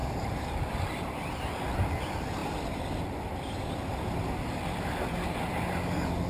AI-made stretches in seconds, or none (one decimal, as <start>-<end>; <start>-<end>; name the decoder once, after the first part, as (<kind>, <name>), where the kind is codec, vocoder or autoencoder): 0.0-0.8 (vocoder, BigVGAN v2)